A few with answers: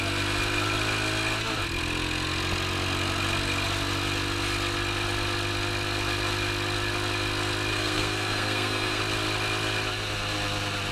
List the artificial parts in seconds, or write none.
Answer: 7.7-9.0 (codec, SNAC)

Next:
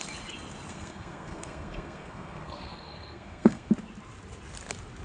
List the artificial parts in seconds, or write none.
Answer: 0.7-3.7 (codec, SNAC)

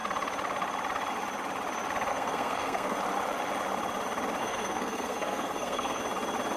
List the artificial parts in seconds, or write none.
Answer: 2.1-3.0 (codec, SNAC); 4.4-6.0

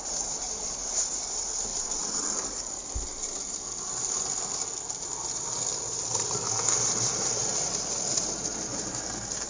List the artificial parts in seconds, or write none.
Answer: none

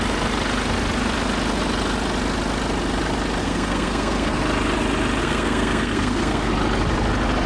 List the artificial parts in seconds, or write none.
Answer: 3.4-4.4 (codec, SNAC); 5.2-6.5

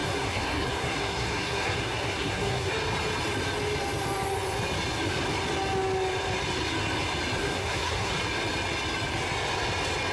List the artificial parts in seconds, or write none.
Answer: 0.0-2.7 (codec, SNAC); 7.4-8.1

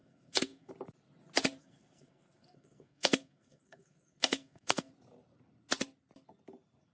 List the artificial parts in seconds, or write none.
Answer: 0.0-0.7 (codec, SNAC); 1.6-4.9

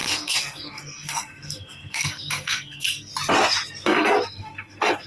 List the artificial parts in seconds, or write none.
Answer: 0.0-3.1 (codec, SNAC); 3.8-5.1